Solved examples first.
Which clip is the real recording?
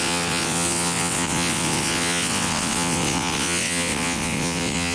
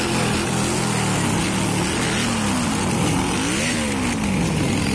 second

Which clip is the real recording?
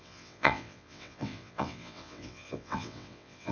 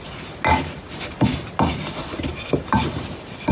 second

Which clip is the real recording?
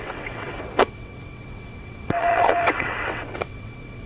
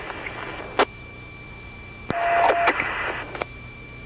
second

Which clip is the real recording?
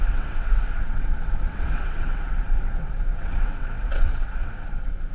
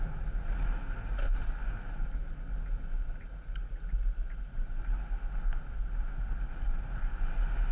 second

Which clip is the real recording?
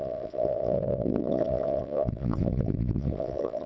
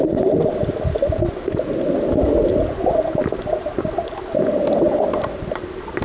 second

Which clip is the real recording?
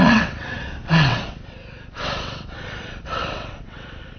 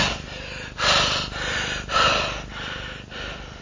second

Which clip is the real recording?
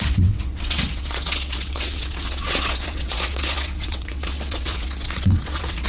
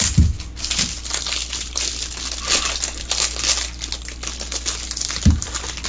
second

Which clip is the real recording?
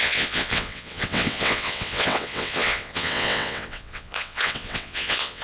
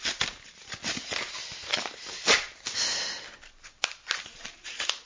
second